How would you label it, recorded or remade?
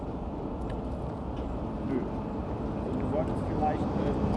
recorded